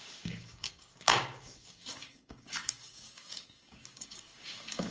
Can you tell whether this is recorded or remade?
remade